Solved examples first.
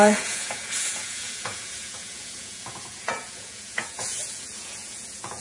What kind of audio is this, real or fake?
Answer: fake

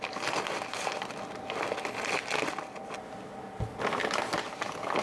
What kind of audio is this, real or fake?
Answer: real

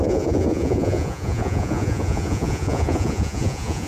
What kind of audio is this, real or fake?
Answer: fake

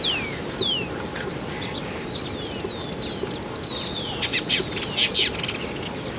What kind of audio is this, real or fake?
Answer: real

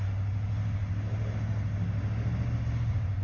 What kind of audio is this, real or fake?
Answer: real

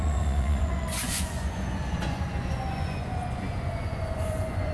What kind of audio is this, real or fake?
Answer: fake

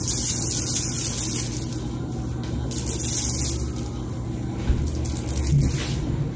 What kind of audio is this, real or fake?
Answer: real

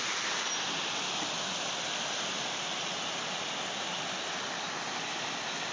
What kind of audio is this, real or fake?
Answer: real